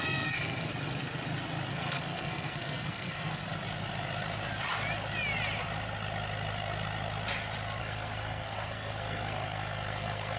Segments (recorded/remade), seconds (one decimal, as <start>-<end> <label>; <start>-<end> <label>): 0.0-0.7 remade; 0.7-1.7 recorded; 1.7-3.4 remade; 3.4-7.8 recorded; 7.8-10.4 remade